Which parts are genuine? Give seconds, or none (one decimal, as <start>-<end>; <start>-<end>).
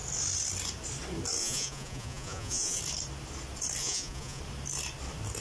0.0-1.4; 2.8-3.8; 4.4-5.4